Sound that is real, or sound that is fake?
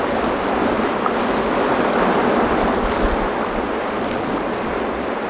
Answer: real